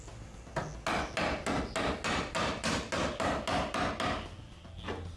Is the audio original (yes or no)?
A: yes